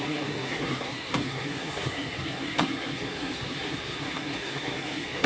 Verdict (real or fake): fake